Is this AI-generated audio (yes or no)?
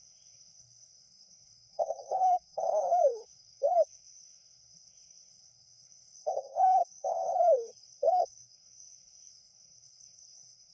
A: yes